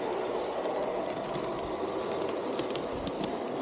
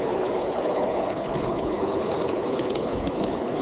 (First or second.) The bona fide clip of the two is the first